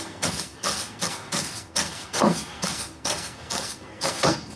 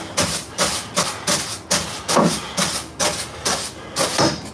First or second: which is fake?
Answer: first